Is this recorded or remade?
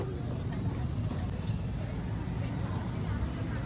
recorded